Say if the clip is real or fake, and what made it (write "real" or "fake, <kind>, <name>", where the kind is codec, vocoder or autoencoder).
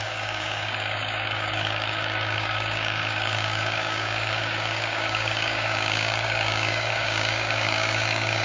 fake, codec, DAC